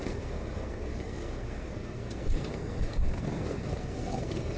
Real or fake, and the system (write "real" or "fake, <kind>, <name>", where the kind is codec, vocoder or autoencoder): fake, codec, SNAC